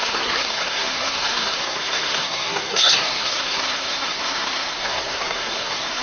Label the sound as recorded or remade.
remade